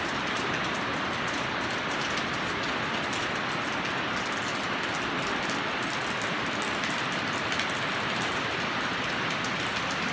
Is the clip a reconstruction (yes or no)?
no